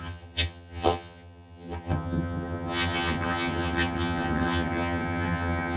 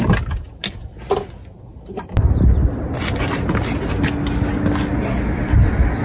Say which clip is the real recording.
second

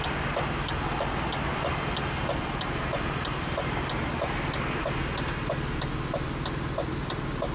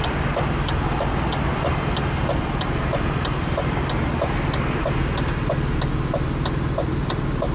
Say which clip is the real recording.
first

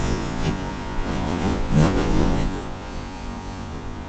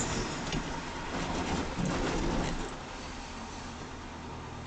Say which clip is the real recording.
second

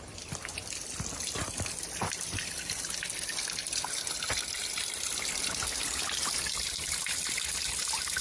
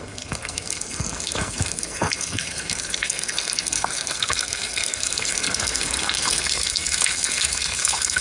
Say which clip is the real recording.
first